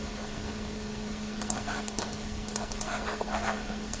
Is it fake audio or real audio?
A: fake